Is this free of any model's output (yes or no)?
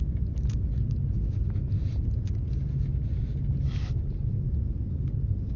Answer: yes